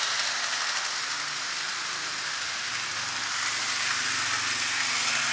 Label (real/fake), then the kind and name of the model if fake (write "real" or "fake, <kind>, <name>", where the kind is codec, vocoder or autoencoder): real